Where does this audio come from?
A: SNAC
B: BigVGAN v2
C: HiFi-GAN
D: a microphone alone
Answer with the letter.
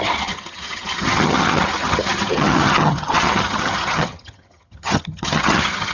C